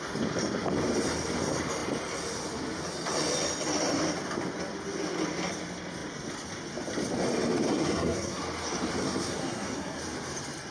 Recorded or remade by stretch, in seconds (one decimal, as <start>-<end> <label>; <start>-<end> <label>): 0.0-7.7 recorded; 7.7-8.4 remade; 8.4-9.0 recorded; 9.0-10.0 remade; 10.0-10.7 recorded